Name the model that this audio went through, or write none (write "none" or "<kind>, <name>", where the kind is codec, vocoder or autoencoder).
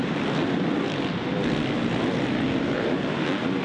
none